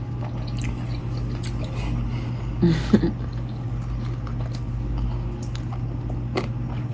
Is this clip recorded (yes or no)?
yes